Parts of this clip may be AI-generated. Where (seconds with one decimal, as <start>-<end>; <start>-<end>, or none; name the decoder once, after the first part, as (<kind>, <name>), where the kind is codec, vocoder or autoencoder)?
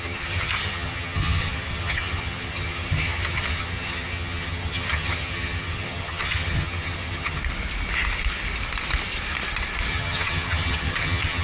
0.0-7.4 (vocoder, HiFi-GAN); 9.9-11.4